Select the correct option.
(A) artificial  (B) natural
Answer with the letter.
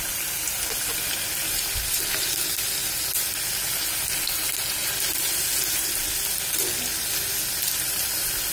B